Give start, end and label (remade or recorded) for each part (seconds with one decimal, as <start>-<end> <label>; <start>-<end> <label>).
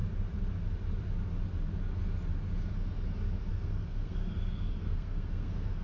0.0-3.5 recorded; 3.5-5.8 remade